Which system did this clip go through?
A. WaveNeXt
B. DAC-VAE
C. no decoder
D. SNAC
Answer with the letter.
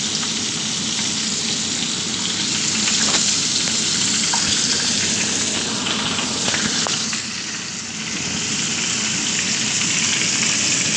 C